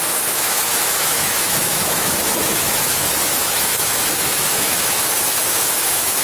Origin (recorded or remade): remade